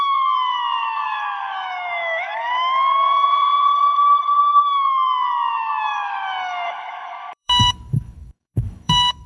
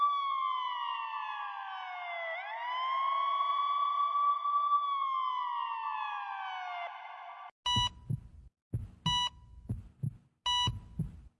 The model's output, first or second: first